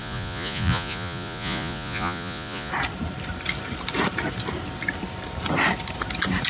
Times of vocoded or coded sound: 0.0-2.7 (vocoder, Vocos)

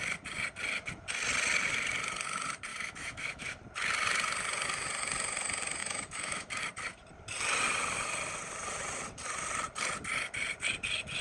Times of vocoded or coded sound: 2.7-3.5 (autoencoder, DAC-VAE); 5.8-6.6

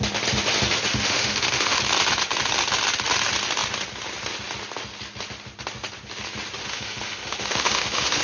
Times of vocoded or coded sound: 0.9-1.8 (autoencoder, DAC-VAE); 6.6-8.2

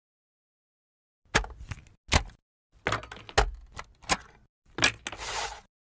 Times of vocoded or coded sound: none

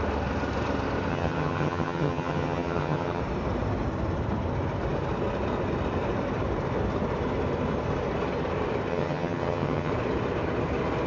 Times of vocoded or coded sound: 1.1-3.2 (vocoder, HiFi-GAN); 8.9-9.9